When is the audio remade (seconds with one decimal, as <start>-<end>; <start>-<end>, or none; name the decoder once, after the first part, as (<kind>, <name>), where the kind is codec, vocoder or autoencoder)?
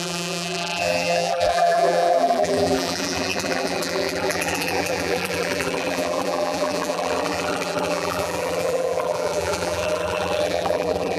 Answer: 0.0-11.2 (vocoder, BigVGAN v2)